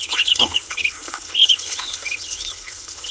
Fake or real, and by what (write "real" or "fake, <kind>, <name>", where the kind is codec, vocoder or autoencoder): fake, codec, HILCodec